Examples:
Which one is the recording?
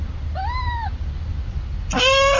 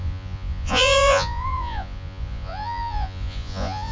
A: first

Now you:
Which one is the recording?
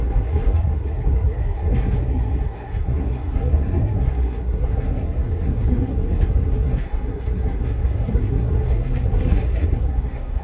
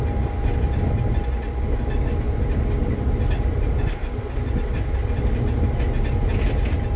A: second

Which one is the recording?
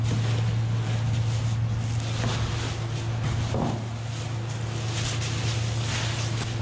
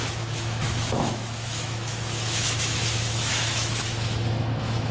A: first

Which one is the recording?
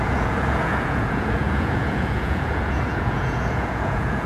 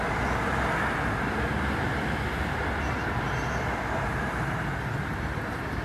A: second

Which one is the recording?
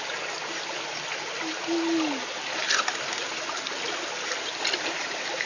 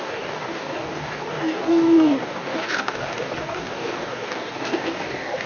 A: first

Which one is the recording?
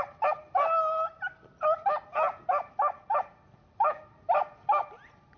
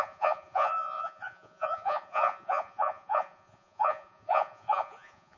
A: first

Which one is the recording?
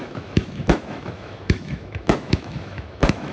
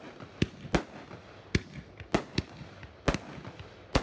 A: second